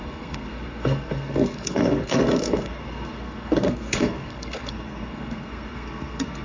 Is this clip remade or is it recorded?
remade